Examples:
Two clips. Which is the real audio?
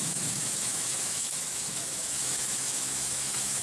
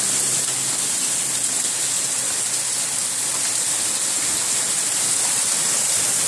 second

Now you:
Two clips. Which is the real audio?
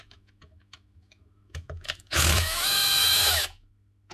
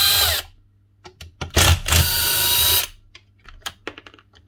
second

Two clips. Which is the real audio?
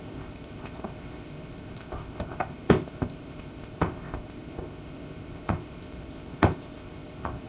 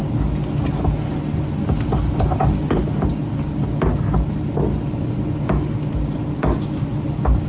second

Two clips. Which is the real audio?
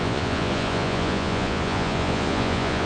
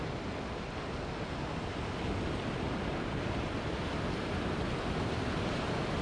second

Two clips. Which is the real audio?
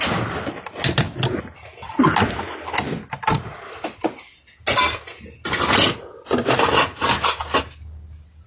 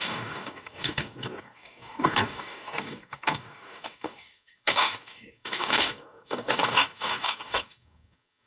first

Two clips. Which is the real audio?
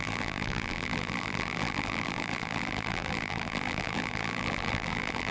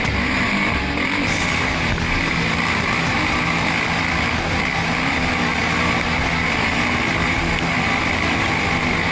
second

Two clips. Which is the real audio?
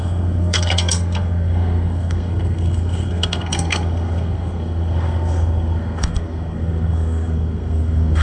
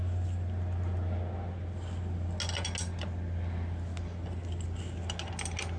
second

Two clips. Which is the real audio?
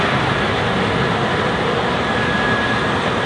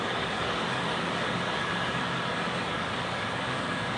first